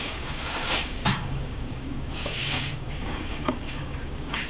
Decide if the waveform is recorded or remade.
remade